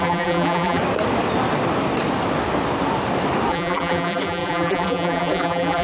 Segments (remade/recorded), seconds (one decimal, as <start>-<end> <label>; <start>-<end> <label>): 0.0-0.8 remade; 0.8-3.5 recorded; 3.5-5.8 remade